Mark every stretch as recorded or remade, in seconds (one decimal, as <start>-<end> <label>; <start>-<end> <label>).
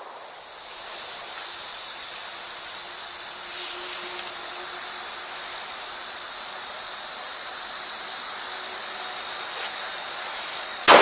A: 0.0-11.0 recorded